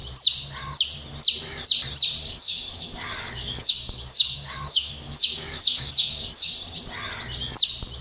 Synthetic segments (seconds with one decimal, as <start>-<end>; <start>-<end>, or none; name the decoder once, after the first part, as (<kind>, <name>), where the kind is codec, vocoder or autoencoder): 2.2-6.5 (codec, DAC)